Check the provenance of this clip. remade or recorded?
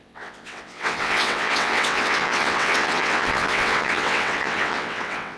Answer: remade